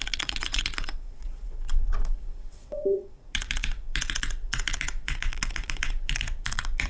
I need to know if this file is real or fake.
fake